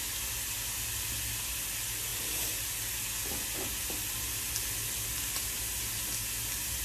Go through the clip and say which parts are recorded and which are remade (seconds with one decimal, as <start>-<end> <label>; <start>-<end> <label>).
0.0-6.8 recorded